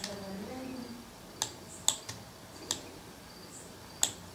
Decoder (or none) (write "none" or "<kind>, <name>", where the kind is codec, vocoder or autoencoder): none